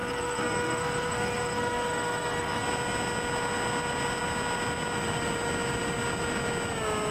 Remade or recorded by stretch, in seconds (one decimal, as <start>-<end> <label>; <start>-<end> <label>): 0.0-2.6 remade; 2.6-7.1 recorded